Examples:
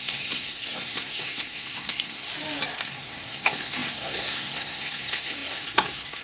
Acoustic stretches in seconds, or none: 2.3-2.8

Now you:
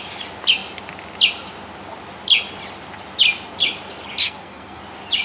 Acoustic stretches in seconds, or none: 0.0-4.2; 4.8-5.2

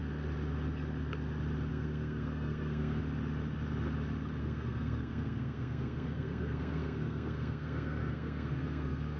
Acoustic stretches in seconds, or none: 0.0-1.7; 3.0-4.4